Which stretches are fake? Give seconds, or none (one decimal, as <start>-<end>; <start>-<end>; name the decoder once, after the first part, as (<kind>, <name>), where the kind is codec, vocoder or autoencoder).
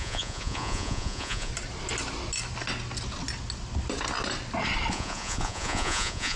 0.0-1.5 (vocoder, Vocos); 4.9-6.4